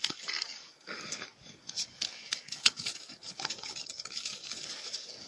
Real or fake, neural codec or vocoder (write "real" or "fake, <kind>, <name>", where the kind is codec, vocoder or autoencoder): fake, codec, DAC